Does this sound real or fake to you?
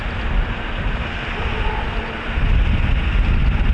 real